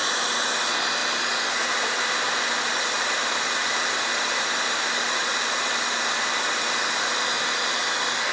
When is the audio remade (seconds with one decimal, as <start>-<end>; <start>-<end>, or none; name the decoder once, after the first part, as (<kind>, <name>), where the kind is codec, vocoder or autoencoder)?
none